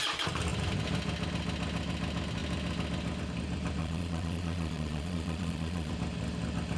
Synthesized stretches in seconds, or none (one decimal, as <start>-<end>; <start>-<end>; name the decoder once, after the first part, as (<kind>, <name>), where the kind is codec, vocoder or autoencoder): 3.8-5.9 (vocoder, Vocos)